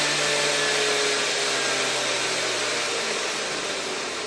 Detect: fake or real real